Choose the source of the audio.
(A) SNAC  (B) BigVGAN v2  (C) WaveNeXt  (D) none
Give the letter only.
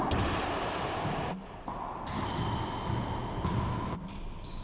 D